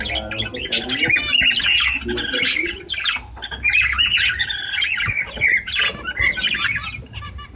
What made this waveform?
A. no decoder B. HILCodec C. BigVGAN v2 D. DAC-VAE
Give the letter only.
A